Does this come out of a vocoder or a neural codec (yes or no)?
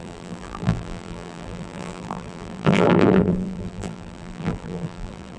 yes